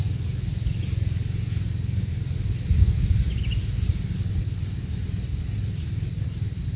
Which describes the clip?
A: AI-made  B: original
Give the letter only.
B